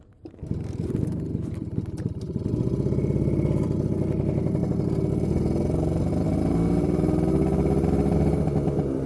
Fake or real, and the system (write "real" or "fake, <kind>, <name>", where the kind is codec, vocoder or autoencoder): real